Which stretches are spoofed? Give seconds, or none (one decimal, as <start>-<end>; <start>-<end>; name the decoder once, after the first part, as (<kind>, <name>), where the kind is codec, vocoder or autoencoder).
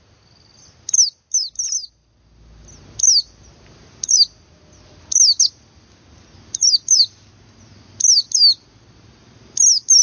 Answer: none